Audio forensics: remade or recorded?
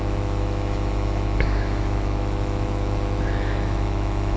remade